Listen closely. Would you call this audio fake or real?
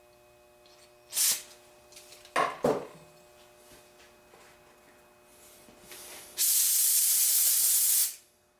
real